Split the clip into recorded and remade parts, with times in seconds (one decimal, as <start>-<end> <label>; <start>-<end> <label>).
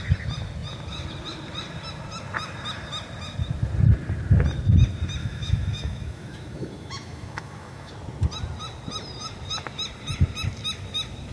0.0-5.2 recorded; 5.2-7.9 remade; 7.9-11.3 recorded